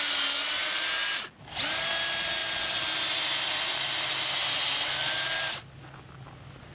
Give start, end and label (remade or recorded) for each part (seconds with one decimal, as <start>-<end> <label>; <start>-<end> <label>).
0.0-6.7 recorded